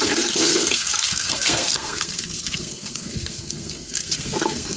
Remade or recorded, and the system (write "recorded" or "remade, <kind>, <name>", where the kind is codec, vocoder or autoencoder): remade, codec, SNAC